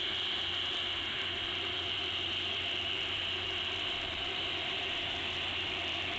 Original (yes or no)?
no